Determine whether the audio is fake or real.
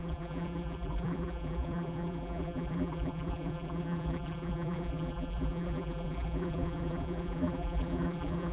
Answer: fake